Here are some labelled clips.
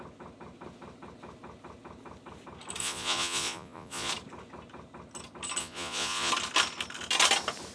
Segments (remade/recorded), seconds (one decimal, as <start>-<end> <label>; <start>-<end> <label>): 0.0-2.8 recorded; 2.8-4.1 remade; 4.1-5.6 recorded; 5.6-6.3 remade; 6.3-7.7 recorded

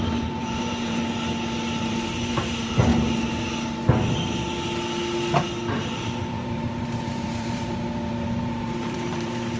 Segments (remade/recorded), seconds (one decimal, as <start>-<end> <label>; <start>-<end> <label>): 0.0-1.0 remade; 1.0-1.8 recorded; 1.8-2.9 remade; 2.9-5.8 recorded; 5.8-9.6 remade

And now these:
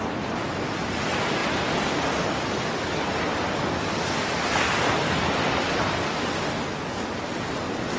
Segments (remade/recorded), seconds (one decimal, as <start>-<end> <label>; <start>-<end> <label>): 0.0-8.0 recorded

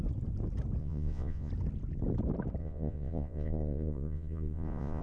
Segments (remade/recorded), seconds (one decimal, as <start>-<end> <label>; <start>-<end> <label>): 0.0-0.8 recorded; 0.8-1.5 remade; 1.5-2.6 recorded; 2.6-5.0 remade